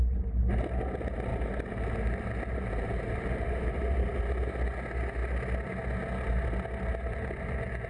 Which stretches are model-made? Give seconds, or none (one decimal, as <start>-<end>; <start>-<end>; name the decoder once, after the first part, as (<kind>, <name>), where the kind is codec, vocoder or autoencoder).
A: 1.3-4.2 (vocoder, BigVGAN v2)